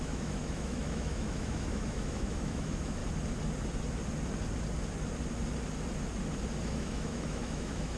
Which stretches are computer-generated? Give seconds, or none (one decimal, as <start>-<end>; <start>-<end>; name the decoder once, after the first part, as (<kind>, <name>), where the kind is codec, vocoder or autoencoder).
0.0-3.0 (autoencoder, DAC-VAE); 6.6-8.0